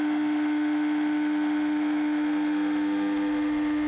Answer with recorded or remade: remade